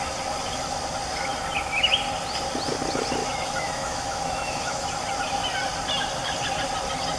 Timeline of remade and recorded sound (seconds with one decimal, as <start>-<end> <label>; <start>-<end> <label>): 0.0-3.2 recorded; 3.2-4.9 remade; 4.9-7.2 recorded